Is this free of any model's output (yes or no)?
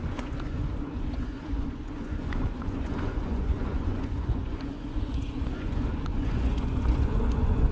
no